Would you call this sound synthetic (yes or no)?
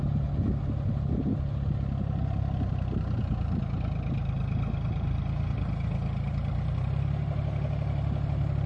no